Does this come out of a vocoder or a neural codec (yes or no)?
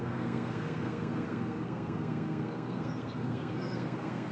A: yes